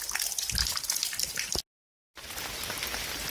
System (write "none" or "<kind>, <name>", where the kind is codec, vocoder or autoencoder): none